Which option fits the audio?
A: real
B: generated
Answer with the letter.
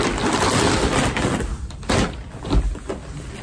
A